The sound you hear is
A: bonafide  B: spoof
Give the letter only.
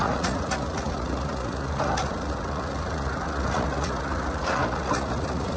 B